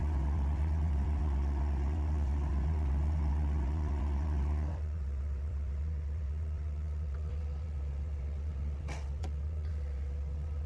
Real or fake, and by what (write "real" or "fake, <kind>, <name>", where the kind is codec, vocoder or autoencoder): fake, vocoder, WaveNeXt